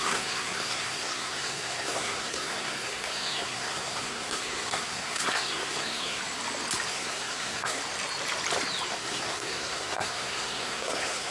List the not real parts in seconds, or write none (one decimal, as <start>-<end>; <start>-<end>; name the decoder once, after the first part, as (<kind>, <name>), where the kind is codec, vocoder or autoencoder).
0.0-6.2 (codec, SNAC); 6.9-7.8; 9.0-11.3